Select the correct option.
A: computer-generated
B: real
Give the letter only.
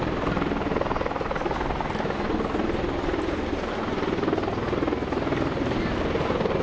B